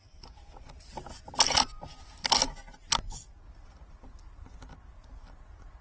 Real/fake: real